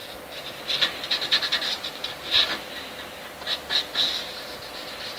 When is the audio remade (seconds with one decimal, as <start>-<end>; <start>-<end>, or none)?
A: none